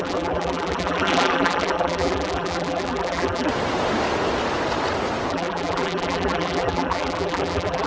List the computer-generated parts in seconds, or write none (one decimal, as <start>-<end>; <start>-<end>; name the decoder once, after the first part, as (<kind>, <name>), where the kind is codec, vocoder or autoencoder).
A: 0.0-3.5 (vocoder, BigVGAN v2); 5.3-7.9